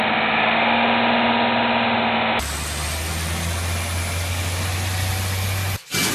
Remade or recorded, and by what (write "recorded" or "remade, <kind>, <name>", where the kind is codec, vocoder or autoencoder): recorded